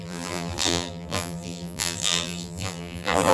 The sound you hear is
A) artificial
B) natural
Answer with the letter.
A